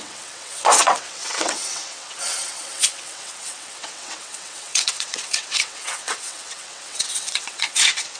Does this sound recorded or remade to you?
remade